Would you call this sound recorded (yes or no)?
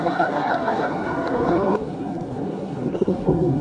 no